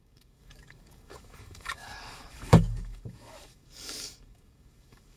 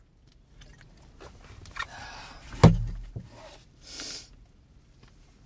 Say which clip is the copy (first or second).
first